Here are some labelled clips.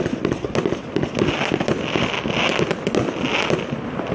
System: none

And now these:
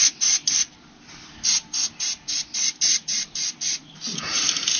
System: none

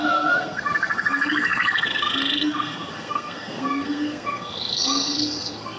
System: codec, SNAC